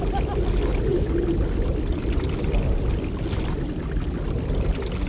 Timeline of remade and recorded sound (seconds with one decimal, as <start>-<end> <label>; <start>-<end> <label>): 0.0-5.1 recorded